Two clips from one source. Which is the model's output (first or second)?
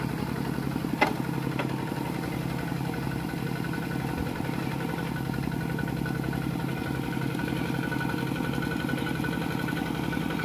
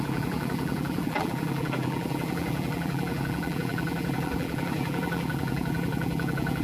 second